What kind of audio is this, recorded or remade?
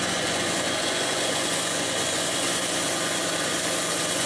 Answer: remade